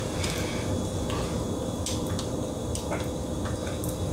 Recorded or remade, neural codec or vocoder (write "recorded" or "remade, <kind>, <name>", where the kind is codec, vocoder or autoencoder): recorded